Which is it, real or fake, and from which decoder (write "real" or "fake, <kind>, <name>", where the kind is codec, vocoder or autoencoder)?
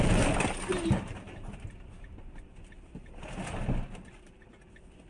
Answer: real